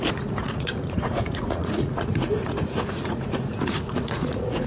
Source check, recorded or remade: remade